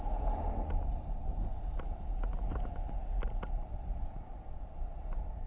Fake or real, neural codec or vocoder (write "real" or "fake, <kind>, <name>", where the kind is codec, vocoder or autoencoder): real